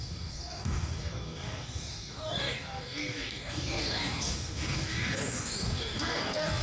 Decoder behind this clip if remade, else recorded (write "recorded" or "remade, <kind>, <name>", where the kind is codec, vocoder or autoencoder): remade, codec, DAC